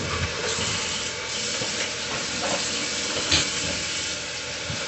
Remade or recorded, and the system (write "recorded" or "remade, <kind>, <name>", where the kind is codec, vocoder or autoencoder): recorded